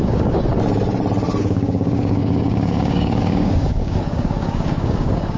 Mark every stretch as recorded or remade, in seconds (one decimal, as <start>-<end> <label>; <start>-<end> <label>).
0.0-0.4 remade; 0.4-1.4 recorded; 1.4-5.4 remade